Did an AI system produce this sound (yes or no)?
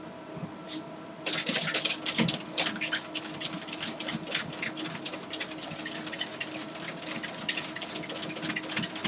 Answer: no